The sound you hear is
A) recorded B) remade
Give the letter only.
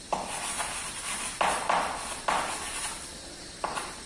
A